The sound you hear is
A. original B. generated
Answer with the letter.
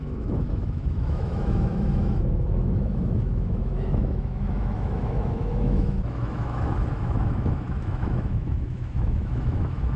B